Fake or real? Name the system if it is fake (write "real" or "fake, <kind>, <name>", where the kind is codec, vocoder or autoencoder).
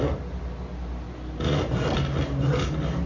real